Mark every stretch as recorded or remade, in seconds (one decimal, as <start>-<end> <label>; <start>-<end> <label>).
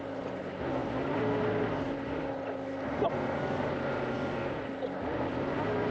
0.0-5.9 recorded